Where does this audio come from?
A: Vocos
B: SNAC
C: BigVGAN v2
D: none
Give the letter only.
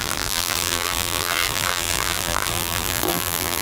C